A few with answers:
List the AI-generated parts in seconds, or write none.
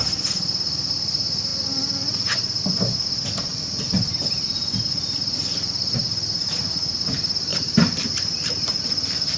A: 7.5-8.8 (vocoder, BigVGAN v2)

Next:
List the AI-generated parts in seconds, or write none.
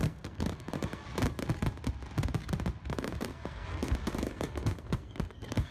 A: 0.0-1.0 (codec, SNAC); 2.9-5.7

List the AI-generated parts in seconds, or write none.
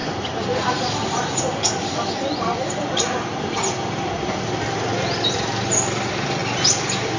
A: 4.3-7.2 (vocoder, BigVGAN v2)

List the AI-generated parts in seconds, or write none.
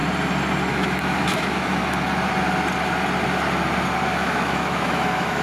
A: 0.7-1.8 (autoencoder, DAC-VAE); 4.1-5.4